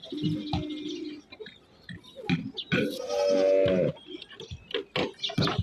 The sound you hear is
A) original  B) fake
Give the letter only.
A